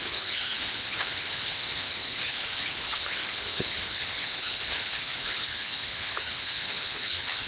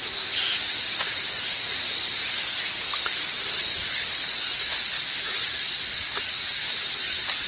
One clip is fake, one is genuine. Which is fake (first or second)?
first